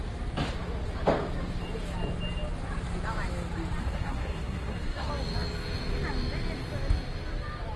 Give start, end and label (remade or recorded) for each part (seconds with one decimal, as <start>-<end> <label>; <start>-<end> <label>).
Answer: 0.0-3.8 recorded; 3.8-5.1 remade; 5.1-7.8 recorded